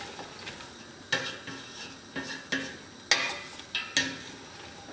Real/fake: real